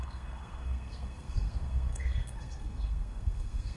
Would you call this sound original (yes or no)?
no